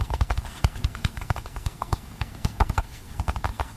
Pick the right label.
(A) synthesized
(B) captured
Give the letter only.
A